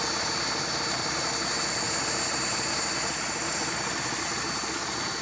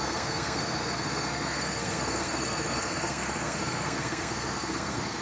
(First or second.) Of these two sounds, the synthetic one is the second